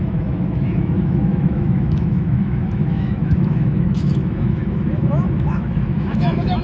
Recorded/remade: remade